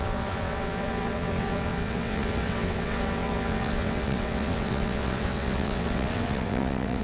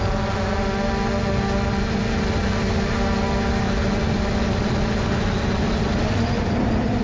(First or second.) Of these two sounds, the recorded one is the second